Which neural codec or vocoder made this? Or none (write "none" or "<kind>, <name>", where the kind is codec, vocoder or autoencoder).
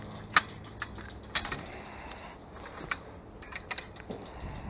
none